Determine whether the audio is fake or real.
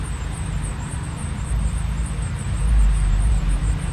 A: fake